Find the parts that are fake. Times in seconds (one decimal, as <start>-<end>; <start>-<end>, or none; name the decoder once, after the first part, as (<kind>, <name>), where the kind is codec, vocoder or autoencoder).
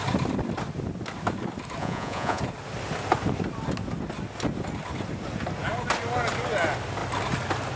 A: 1.8-2.4 (vocoder, Vocos)